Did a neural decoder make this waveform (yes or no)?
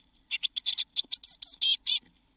no